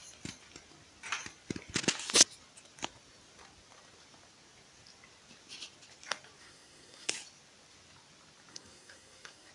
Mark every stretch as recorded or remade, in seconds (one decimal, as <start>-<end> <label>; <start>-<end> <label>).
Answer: 0.0-6.4 recorded; 6.4-7.1 remade; 7.1-8.5 recorded; 8.5-9.5 remade